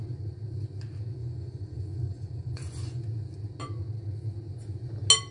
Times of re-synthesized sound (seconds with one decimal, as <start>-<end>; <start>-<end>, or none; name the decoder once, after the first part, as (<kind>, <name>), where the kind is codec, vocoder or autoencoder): 1.2-3.0 (vocoder, Vocos)